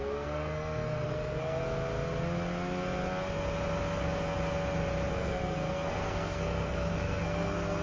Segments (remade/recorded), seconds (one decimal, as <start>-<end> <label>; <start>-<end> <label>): 0.0-1.6 remade; 1.6-5.1 recorded; 5.1-7.8 remade